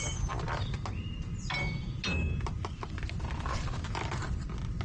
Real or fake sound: real